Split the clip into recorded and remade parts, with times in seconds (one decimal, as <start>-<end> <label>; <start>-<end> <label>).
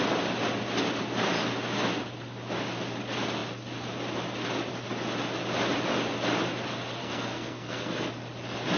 0.0-7.0 recorded; 7.0-8.1 remade; 8.1-8.8 recorded